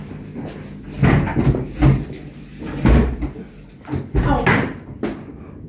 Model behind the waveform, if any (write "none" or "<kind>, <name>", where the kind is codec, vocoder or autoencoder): none